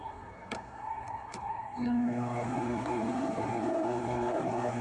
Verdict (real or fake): fake